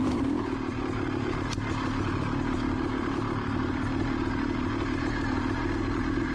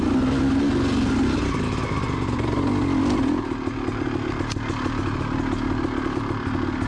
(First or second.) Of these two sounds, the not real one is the first